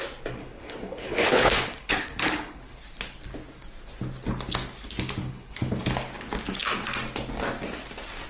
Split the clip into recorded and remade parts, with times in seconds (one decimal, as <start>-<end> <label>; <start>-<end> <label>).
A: 0.0-0.4 recorded; 0.4-2.8 remade; 2.8-5.2 recorded; 5.2-5.8 remade; 5.8-8.3 recorded